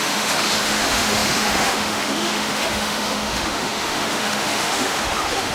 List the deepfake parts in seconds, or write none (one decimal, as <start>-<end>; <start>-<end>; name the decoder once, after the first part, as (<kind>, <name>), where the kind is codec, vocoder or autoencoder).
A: 0.0-5.5 (autoencoder, DAC-VAE)